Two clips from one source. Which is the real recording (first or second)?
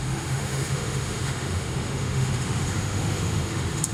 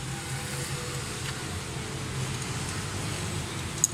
second